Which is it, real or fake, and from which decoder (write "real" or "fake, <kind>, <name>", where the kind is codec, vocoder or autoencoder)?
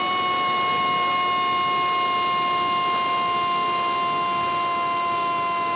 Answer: real